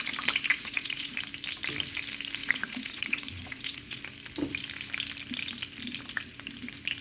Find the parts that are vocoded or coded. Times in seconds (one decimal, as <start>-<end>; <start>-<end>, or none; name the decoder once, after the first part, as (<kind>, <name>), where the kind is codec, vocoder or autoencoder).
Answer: 0.5-1.2 (vocoder, Vocos); 2.4-4.0